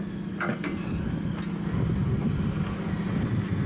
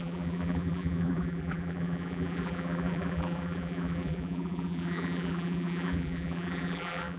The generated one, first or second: second